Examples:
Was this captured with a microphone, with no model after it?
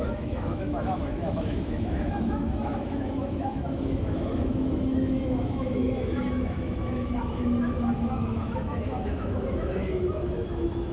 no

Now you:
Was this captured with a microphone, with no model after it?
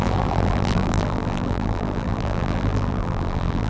no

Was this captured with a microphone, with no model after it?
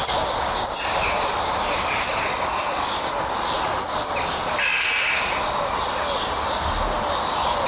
yes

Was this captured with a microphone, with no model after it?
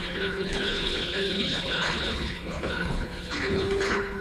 no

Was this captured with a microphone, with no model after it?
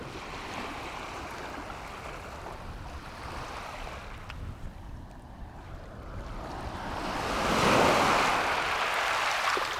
yes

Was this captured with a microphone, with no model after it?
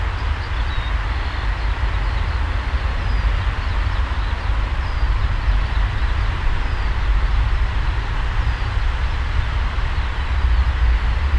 yes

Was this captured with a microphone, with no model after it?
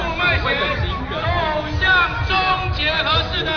yes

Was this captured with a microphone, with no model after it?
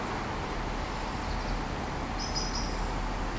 yes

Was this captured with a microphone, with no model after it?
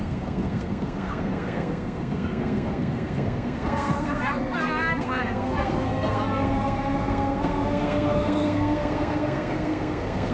no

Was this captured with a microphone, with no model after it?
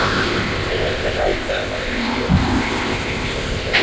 no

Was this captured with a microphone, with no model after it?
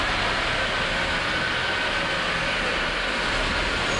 yes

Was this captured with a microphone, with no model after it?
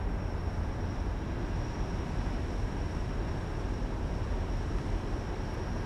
yes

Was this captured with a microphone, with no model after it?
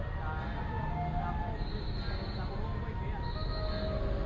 yes